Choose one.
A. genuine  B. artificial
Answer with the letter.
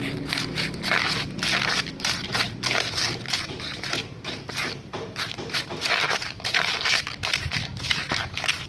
B